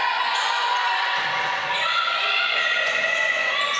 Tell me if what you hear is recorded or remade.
remade